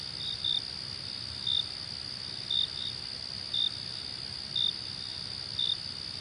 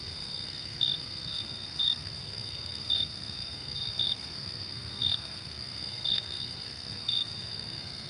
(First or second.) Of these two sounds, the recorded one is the first